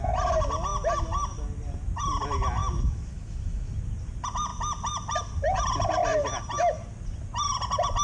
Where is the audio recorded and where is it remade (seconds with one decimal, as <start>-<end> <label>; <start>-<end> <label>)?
0.0-2.6 recorded; 2.6-3.7 remade; 3.7-8.0 recorded

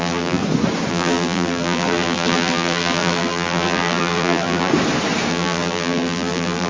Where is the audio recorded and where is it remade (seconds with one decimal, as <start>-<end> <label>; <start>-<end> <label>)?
0.0-0.4 remade; 0.4-0.9 recorded; 0.9-4.7 remade; 4.7-5.3 recorded; 5.3-6.7 remade

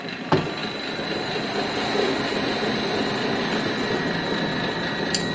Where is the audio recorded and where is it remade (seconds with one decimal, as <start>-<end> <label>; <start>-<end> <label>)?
0.0-0.6 recorded; 0.6-1.7 remade; 1.7-5.3 recorded